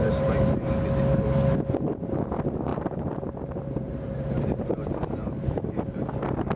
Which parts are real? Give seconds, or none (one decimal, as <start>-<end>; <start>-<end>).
0.7-2.7; 6.0-6.6